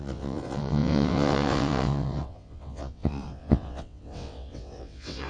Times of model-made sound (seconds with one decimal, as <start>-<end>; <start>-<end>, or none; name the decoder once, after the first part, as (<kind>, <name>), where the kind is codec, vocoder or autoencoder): 0.0-5.3 (vocoder, WaveNeXt)